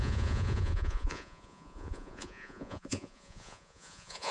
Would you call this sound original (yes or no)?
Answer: no